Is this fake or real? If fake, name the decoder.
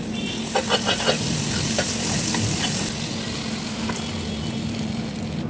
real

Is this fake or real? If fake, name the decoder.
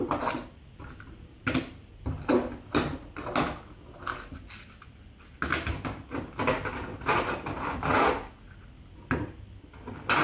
real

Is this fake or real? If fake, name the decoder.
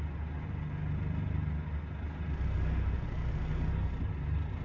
real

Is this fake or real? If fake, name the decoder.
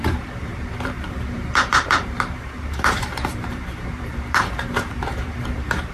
fake, vocoder, BigVGAN v2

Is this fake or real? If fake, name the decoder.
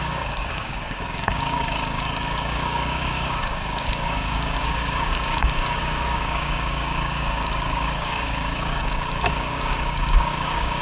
fake, codec, DAC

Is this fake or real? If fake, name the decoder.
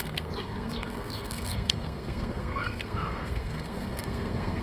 fake, codec, SNAC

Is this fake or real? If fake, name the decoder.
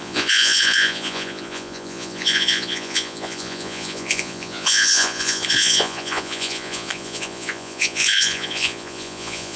fake, vocoder, Vocos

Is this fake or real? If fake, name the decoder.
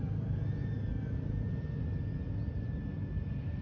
real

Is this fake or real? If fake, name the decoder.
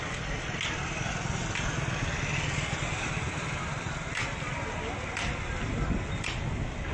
real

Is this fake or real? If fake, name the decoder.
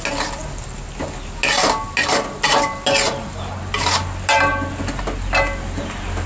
real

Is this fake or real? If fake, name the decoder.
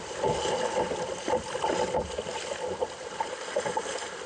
real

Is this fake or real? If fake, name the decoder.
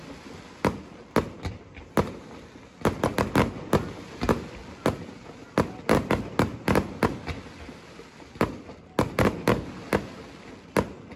real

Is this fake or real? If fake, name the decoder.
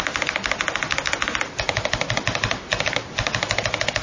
real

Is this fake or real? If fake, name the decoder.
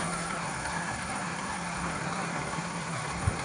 fake, codec, SNAC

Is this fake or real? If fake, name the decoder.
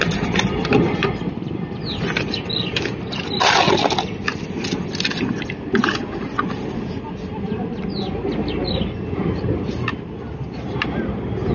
real